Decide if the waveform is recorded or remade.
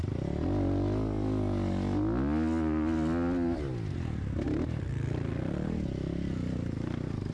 recorded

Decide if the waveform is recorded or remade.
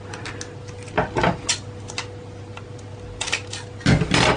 recorded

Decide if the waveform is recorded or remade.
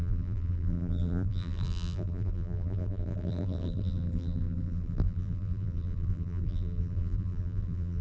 remade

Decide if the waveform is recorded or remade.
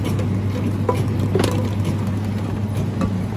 recorded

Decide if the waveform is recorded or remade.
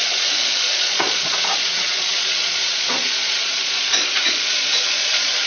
remade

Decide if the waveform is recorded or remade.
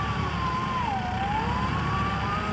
remade